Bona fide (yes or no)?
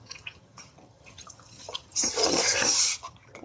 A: no